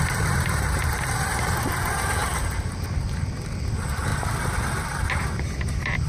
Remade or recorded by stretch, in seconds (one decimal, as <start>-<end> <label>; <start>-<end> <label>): 0.0-6.1 recorded